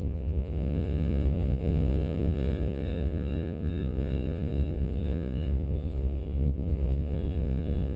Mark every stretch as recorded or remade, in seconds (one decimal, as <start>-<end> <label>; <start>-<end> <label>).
0.0-8.0 remade